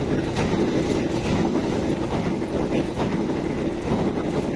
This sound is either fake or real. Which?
real